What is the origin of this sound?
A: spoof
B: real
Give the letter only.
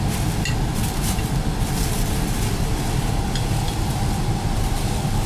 B